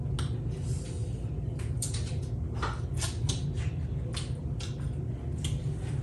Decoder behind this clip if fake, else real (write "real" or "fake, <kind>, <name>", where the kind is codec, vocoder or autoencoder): real